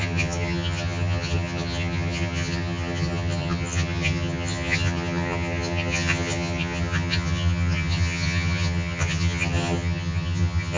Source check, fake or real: fake